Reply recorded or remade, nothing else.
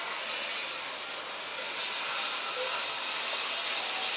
recorded